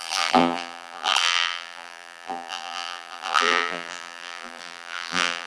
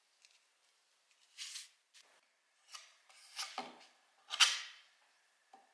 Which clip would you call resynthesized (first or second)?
first